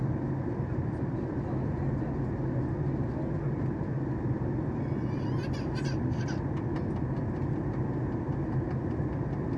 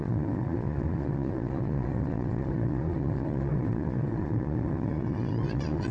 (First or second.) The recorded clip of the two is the first